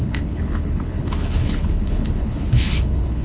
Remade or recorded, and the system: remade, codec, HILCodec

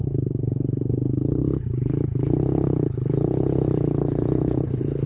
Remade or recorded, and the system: remade, codec, HILCodec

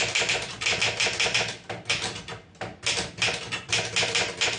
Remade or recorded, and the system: recorded